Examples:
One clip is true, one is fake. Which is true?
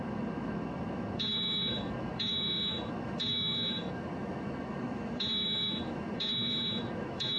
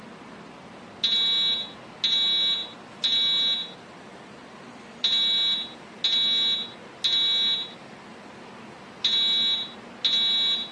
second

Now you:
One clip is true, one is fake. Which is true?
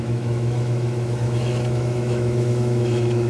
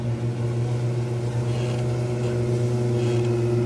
second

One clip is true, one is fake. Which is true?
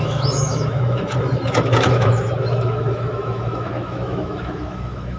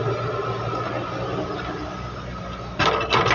second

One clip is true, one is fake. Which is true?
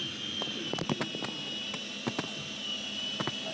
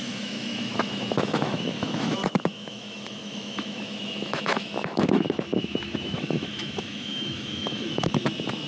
first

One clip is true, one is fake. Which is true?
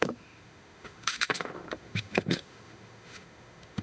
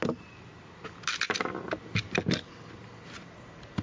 second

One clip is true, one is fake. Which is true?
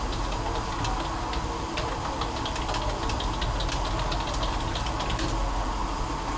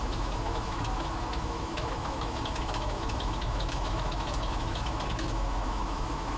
first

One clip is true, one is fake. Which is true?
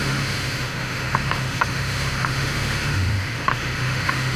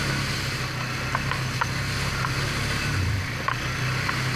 second